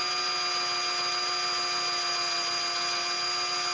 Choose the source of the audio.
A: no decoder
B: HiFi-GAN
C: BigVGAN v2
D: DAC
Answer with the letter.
A